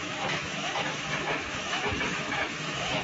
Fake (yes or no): yes